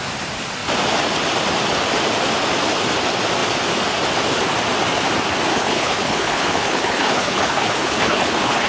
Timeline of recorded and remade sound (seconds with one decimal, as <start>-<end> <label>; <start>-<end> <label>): 0.0-5.5 recorded; 5.5-8.7 remade